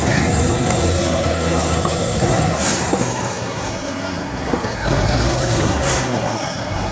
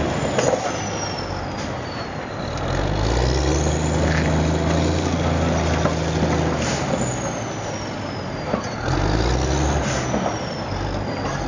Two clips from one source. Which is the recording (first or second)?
second